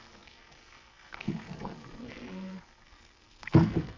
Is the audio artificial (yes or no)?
yes